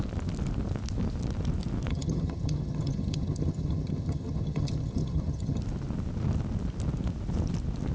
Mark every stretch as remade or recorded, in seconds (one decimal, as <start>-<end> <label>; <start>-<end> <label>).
0.0-1.9 recorded; 1.9-5.6 remade; 5.6-7.9 recorded

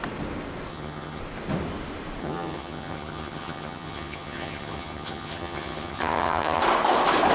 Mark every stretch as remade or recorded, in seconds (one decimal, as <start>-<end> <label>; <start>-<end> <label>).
0.0-0.7 recorded; 0.7-1.2 remade; 1.2-2.2 recorded; 2.2-6.6 remade; 6.6-7.3 recorded

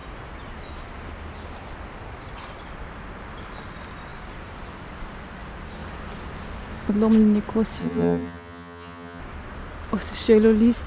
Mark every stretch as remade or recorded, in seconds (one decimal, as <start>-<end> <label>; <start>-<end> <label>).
0.0-7.8 recorded; 7.8-9.2 remade; 9.2-10.9 recorded

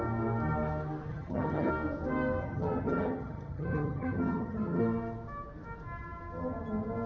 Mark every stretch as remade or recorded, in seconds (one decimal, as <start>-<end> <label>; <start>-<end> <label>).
0.0-1.1 recorded; 1.1-1.7 remade; 1.7-2.4 recorded; 2.4-4.8 remade; 4.8-7.1 recorded

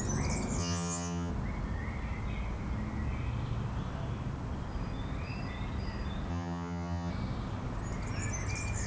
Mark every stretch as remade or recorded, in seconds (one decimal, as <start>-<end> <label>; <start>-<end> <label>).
0.0-0.6 recorded; 0.6-1.3 remade; 1.3-6.3 recorded; 6.3-7.1 remade; 7.1-8.9 recorded

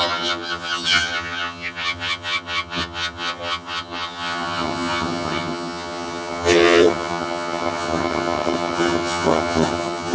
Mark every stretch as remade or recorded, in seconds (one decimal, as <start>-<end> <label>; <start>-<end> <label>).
0.0-10.1 remade